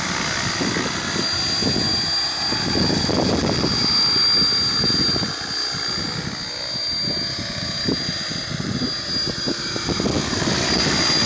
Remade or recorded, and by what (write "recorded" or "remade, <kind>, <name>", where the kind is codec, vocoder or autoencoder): recorded